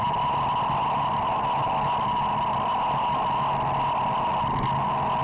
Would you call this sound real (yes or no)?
yes